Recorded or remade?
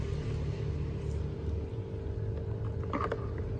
recorded